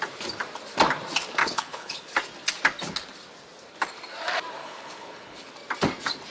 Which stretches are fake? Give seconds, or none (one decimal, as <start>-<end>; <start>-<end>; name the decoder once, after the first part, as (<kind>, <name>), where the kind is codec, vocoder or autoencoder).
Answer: 1.4-2.0 (codec, HILCodec); 4.6-5.5